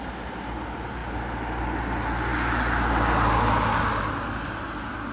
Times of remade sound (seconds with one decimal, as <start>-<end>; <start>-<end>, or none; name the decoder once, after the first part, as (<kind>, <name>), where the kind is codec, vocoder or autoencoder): none